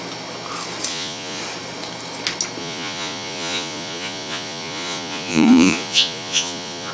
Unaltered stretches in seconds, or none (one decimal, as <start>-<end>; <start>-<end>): 0.0-0.9; 1.4-2.6